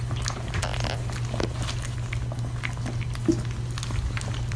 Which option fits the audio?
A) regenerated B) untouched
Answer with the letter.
B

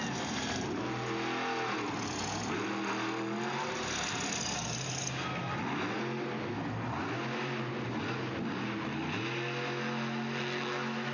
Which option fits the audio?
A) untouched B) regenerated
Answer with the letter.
A